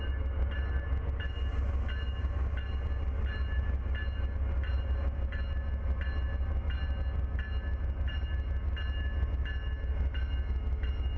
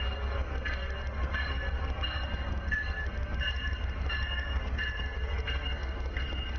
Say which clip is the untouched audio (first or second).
first